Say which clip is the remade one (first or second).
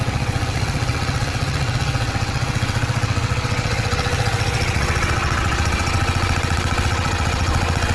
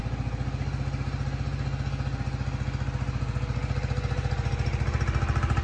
first